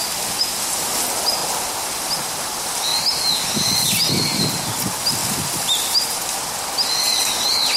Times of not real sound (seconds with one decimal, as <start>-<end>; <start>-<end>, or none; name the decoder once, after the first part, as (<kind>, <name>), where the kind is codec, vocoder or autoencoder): none

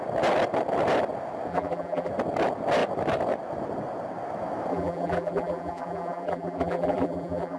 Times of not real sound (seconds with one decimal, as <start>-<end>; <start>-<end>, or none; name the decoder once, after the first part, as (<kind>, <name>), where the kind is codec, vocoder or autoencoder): 1.5-2.1 (vocoder, BigVGAN v2); 4.7-7.6